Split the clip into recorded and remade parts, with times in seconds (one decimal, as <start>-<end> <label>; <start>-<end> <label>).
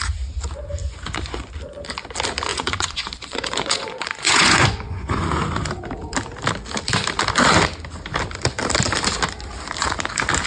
0.0-0.8 recorded; 0.8-1.5 remade; 1.5-2.5 recorded; 2.5-5.7 remade; 5.7-10.5 recorded